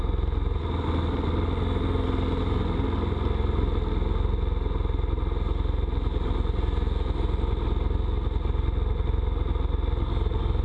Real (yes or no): yes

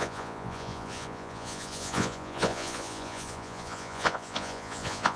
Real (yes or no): no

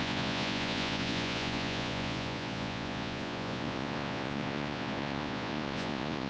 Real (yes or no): no